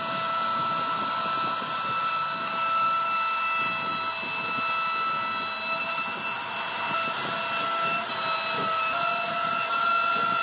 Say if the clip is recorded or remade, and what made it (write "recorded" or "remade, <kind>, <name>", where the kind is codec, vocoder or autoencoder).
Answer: recorded